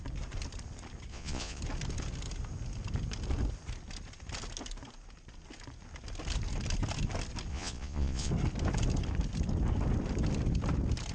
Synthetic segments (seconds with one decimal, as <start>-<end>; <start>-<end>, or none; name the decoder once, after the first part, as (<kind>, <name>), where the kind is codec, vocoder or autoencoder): 1.1-1.6 (vocoder, Vocos); 7.5-8.3